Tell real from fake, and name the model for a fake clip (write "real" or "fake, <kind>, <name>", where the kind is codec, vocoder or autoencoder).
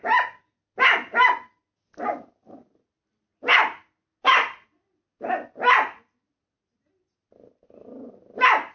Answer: real